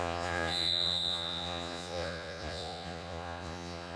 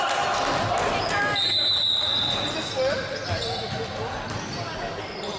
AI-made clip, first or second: first